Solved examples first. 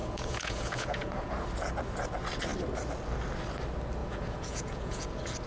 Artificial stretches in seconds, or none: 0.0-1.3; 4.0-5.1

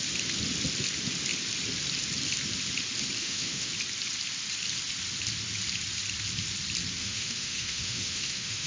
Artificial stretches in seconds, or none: 3.2-3.7; 7.0-8.7

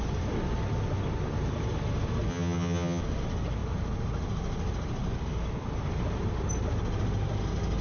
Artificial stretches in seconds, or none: 2.3-3.0

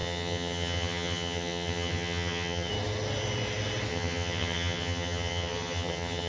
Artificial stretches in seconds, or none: 0.0-2.7; 3.9-6.3

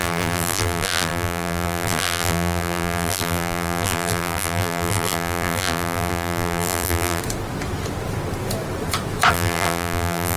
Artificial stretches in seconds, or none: 0.0-7.2; 9.3-10.4

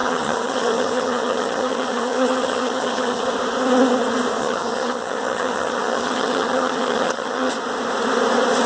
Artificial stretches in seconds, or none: 0.0-3.2; 4.4-7.5

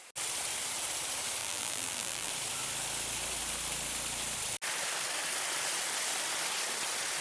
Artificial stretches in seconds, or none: 1.4-2.3